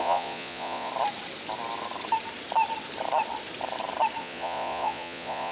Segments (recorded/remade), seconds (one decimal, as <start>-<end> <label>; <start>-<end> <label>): 0.0-0.9 remade; 0.9-4.2 recorded; 4.2-5.5 remade

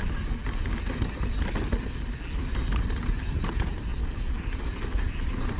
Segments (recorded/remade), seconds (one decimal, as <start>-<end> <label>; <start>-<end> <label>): 0.0-5.6 recorded

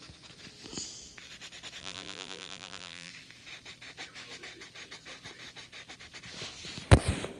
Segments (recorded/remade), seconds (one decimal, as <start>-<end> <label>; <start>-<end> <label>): 0.0-1.8 recorded; 1.8-3.1 remade; 3.1-7.4 recorded